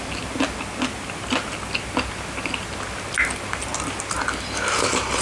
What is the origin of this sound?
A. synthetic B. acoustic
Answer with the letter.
B